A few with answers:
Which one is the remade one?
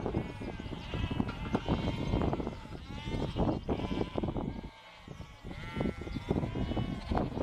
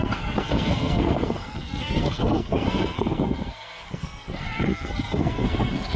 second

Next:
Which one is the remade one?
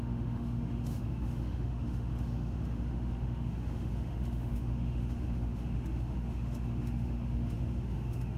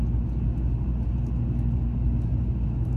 first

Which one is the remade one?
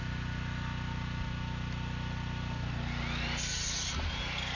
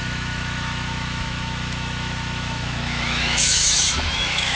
second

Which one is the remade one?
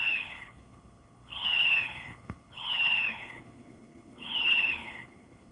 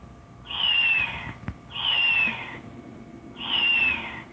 first